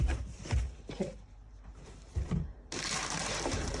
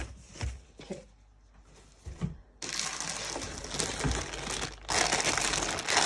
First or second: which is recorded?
second